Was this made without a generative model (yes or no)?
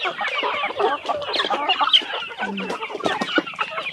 yes